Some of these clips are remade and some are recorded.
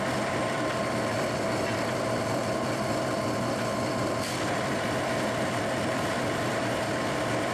remade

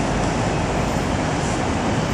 recorded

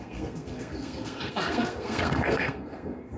remade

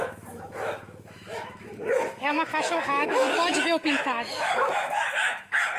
remade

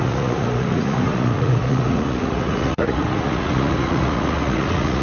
remade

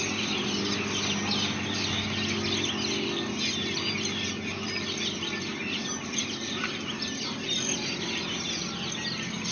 recorded